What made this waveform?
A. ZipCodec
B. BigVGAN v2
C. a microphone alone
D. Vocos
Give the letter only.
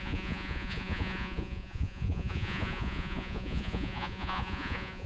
D